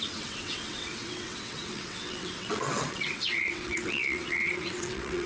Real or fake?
fake